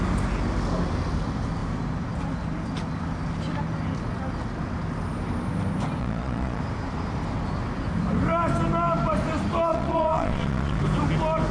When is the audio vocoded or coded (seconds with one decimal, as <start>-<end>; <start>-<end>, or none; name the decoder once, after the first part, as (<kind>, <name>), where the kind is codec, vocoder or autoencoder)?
6.0-6.6 (vocoder, Vocos); 9.7-10.8